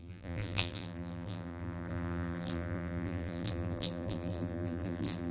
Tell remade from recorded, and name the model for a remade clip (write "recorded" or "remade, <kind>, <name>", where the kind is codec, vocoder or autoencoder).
remade, vocoder, BigVGAN v2